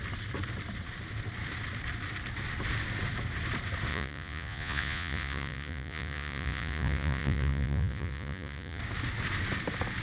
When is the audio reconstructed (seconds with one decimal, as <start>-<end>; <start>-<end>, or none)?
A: 3.9-8.8